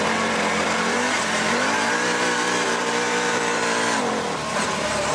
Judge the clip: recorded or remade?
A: remade